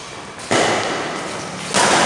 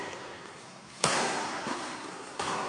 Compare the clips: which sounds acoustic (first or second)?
first